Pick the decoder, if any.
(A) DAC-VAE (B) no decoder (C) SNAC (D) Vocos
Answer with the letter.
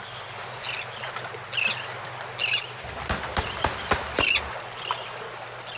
B